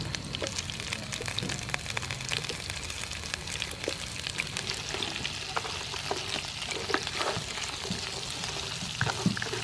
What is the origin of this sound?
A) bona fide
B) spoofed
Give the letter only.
A